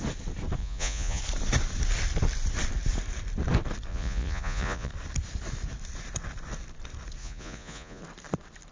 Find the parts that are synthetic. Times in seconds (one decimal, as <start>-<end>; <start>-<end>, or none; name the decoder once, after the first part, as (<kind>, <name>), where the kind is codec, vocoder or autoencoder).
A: 0.6-1.2 (vocoder, Vocos); 3.9-4.9; 7.2-8.0